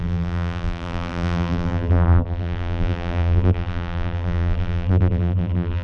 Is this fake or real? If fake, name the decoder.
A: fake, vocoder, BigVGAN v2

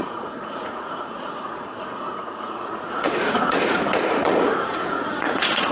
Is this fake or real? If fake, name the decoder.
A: fake, vocoder, Vocos